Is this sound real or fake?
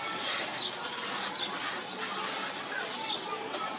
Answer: real